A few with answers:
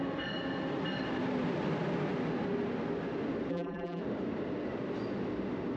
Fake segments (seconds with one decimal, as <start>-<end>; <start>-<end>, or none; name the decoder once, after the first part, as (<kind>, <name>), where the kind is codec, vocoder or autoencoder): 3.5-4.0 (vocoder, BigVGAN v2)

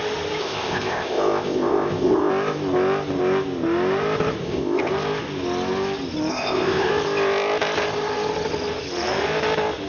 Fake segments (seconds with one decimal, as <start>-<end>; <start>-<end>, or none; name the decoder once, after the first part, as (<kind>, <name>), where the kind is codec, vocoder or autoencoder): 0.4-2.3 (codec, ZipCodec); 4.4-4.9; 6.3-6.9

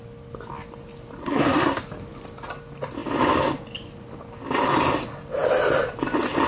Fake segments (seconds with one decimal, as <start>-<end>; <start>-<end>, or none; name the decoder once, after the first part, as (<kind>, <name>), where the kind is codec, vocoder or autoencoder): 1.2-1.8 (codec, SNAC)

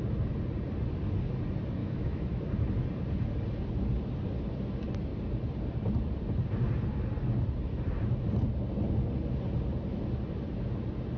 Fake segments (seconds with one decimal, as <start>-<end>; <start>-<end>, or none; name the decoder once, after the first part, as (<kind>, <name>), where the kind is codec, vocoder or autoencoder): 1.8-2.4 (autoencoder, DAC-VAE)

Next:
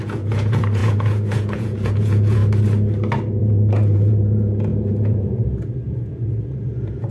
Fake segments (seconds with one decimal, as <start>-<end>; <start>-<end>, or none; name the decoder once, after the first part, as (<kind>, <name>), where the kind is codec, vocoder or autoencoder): 0.0-2.4 (vocoder, Vocos); 3.4-7.1

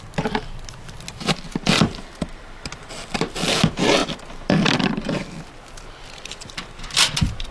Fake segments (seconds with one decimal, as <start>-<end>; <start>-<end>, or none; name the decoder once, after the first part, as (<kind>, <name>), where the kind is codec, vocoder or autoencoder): none

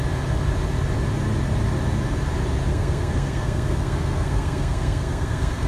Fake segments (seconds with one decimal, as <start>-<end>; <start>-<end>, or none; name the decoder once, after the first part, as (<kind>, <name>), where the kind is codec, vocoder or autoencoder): 2.7-5.7 (codec, SNAC)

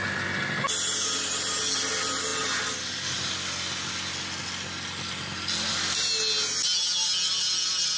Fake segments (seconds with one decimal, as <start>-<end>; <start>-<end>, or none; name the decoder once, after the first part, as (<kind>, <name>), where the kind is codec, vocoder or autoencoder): none